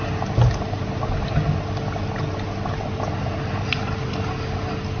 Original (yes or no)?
yes